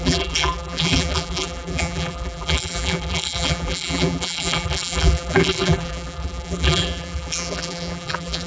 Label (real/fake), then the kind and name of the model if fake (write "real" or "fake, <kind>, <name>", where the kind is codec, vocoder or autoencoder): fake, vocoder, BigVGAN v2